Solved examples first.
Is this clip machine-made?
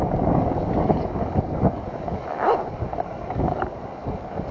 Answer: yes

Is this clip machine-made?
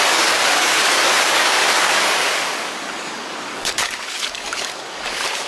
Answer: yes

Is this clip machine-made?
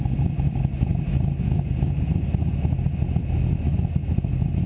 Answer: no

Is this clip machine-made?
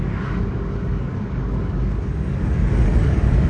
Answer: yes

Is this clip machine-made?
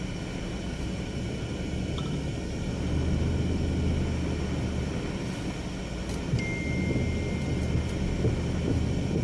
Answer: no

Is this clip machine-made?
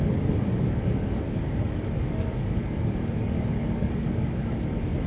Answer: yes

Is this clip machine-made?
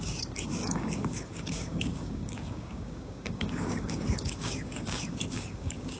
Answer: yes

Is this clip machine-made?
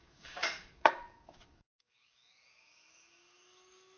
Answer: yes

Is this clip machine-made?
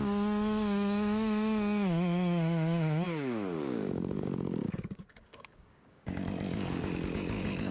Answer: yes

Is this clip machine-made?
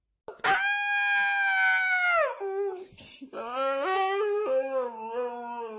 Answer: no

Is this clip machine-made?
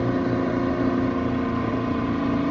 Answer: no